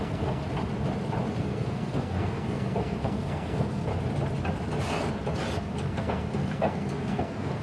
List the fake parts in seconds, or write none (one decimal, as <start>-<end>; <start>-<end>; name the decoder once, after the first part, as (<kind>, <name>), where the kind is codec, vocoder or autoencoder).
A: 0.0-0.4 (codec, SNAC); 1.4-3.9; 5.6-7.6